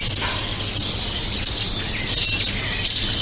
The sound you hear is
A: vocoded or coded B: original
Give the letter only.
B